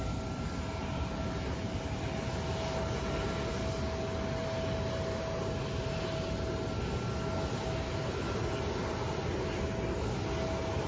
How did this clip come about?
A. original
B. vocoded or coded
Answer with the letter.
A